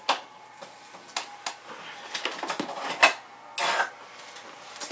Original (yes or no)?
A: yes